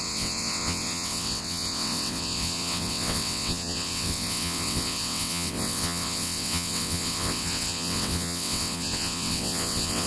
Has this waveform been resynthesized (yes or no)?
yes